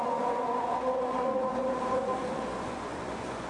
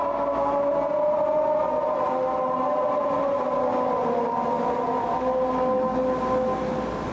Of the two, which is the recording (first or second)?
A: second